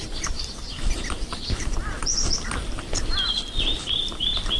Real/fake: fake